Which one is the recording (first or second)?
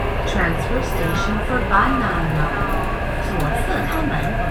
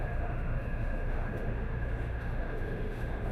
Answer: first